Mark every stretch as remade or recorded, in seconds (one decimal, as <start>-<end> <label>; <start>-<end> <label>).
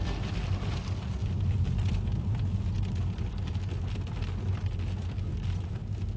0.0-6.2 recorded